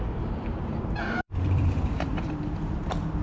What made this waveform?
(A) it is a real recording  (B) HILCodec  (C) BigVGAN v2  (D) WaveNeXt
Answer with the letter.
C